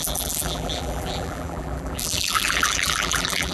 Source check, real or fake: fake